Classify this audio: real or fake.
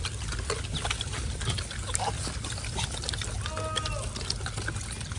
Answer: real